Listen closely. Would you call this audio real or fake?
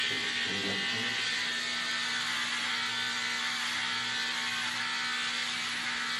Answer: real